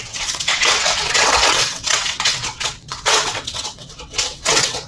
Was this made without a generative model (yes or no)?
no